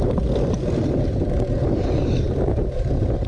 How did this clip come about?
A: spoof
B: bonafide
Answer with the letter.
B